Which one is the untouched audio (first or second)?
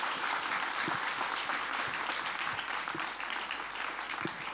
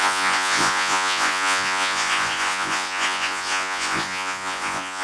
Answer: first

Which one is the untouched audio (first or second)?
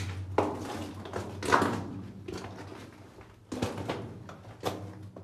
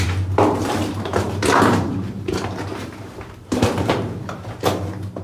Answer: first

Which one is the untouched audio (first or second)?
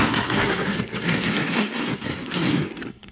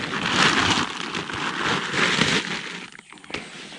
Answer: second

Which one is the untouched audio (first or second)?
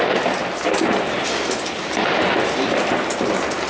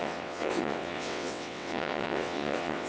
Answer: first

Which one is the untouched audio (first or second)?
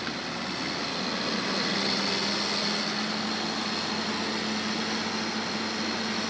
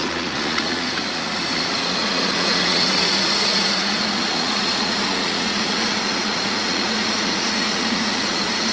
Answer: first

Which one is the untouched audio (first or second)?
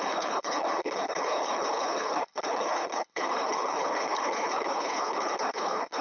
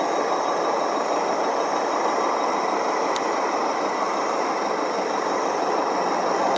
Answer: second